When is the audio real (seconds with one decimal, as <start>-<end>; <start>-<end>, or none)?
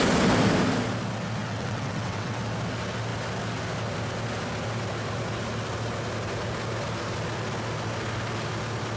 0.0-1.4; 2.4-9.0